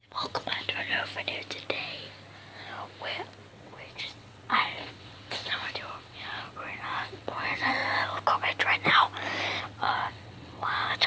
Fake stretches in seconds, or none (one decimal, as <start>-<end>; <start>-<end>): 0.0-0.5; 3.5-7.8; 9.6-11.1